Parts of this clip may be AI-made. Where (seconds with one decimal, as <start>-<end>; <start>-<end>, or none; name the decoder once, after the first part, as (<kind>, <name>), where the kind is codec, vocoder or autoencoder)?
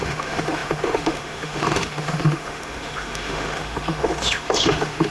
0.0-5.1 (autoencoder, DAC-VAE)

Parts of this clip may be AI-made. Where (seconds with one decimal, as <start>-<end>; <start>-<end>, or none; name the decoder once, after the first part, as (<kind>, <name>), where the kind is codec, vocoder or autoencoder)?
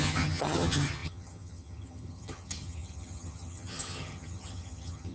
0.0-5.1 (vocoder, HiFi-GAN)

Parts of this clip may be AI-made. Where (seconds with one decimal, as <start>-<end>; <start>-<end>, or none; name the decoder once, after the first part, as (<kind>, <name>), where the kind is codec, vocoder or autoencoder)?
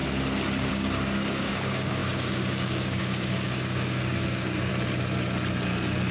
0.7-4.7 (codec, DAC)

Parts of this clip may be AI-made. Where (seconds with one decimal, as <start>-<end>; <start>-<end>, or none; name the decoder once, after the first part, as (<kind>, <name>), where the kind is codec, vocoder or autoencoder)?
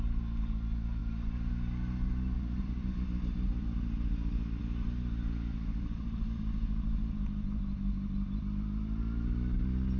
none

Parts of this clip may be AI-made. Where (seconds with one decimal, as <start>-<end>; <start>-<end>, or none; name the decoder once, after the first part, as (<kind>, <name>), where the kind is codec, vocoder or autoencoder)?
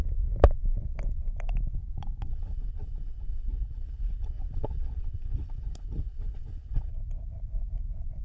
2.3-6.9 (codec, HILCodec)